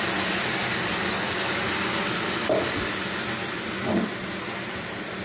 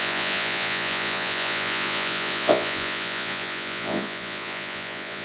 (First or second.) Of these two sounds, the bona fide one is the first